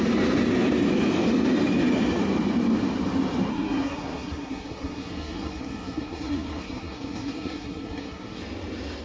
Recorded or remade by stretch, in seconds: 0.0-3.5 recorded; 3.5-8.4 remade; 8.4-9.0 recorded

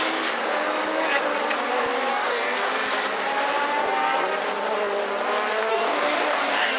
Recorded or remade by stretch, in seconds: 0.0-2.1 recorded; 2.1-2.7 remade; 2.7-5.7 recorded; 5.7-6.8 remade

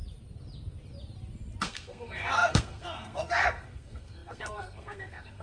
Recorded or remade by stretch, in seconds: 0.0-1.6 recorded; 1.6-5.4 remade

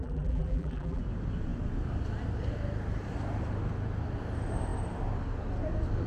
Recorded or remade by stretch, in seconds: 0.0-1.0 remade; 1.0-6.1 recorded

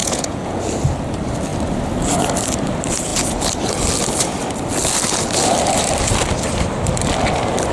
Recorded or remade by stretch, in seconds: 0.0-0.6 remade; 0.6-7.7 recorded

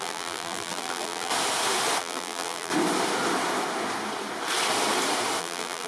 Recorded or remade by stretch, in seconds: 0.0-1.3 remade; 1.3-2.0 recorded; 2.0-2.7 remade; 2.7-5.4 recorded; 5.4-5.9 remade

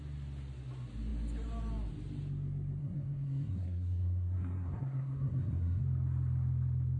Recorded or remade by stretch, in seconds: 0.0-2.8 recorded; 2.8-5.8 remade; 5.8-7.0 recorded